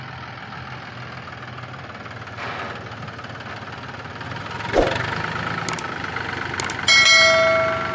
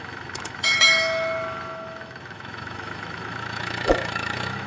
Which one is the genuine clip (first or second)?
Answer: first